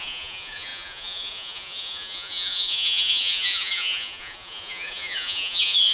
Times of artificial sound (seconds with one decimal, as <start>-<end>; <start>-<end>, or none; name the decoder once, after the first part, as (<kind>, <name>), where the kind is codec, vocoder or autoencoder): 0.0-5.9 (vocoder, Vocos)